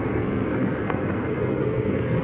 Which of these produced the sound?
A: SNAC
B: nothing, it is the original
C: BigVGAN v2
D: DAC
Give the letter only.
A